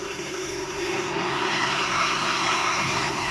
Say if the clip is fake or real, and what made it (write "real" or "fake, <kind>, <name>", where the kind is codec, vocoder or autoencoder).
fake, codec, SNAC